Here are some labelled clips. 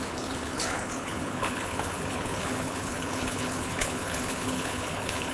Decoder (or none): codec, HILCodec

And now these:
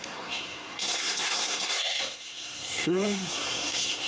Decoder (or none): codec, SNAC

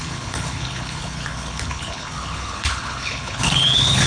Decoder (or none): codec, HILCodec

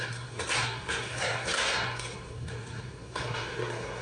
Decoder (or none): codec, SNAC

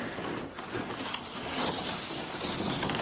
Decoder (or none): none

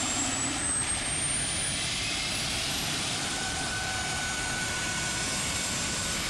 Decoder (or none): vocoder, BigVGAN v2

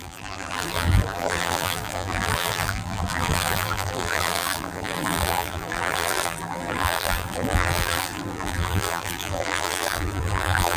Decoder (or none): vocoder, BigVGAN v2